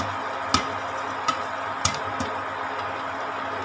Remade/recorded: recorded